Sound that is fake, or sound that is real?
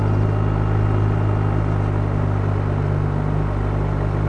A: real